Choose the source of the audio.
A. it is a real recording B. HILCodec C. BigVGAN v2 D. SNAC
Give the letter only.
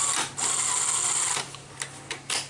A